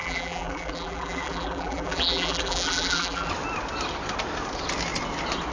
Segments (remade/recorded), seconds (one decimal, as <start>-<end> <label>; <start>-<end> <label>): 0.0-3.3 remade; 3.3-5.5 recorded